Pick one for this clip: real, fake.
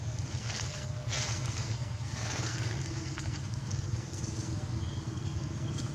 fake